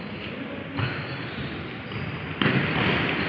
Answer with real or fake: real